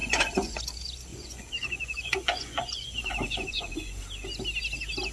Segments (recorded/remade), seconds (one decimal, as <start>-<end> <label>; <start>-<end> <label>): 0.0-0.6 remade; 0.6-1.1 recorded; 1.1-4.0 remade; 4.0-5.1 recorded